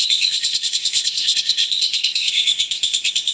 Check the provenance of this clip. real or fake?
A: fake